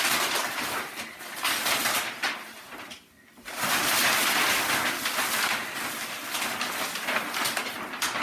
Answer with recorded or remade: recorded